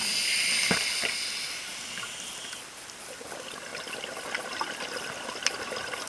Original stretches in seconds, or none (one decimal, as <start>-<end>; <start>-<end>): 0.0-6.1